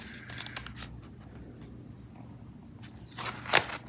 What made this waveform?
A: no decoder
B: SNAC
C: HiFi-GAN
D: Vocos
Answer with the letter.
A